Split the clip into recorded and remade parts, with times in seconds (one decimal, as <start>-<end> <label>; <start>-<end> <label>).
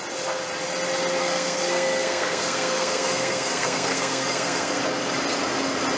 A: 0.0-1.2 recorded; 1.2-4.8 remade; 4.8-6.0 recorded